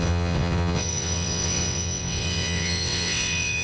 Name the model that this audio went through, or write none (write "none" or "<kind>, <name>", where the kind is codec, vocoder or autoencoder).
vocoder, WaveNeXt